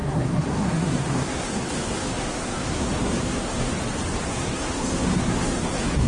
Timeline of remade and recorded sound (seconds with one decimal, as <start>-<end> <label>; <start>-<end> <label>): 0.0-3.7 remade; 3.7-4.3 recorded; 4.3-6.1 remade